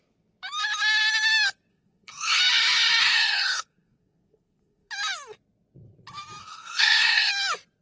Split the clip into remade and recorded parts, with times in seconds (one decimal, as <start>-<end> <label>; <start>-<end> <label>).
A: 0.0-1.7 recorded; 1.7-2.4 remade; 2.4-3.0 recorded; 3.0-4.9 remade; 4.9-6.4 recorded; 6.4-7.3 remade; 7.3-7.8 recorded